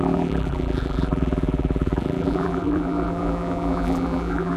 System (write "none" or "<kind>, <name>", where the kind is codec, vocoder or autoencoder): vocoder, BigVGAN v2